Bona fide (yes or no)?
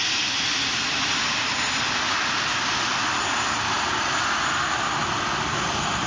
yes